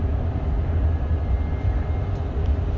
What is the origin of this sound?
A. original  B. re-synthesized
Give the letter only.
A